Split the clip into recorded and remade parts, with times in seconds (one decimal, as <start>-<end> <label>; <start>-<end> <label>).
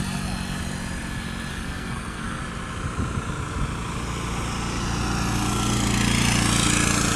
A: 0.0-1.5 recorded; 1.5-2.4 remade; 2.4-7.2 recorded